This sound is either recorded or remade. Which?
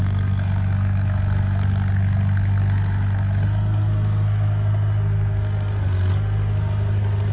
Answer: remade